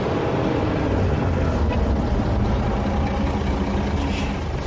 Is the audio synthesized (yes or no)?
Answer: no